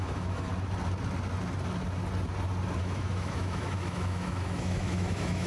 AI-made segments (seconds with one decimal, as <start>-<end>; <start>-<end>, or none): 0.0-0.5; 2.8-5.5